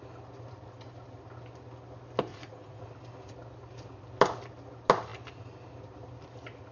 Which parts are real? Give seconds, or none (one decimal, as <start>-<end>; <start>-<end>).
0.0-2.3; 2.9-6.7